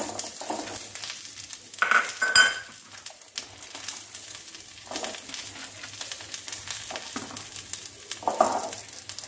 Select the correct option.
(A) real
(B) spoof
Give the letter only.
A